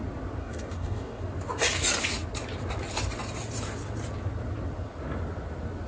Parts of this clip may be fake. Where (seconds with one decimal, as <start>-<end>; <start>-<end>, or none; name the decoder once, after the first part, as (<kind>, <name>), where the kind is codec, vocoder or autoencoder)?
0.4-1.2 (codec, DAC)